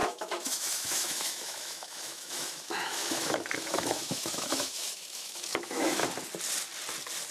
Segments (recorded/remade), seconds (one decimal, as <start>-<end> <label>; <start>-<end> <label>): 0.0-6.0 remade; 6.0-7.3 recorded